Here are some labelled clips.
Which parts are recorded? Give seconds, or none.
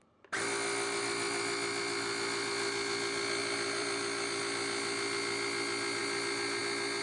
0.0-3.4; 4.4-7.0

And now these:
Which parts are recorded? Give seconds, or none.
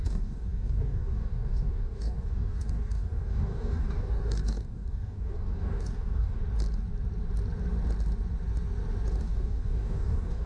6.4-9.2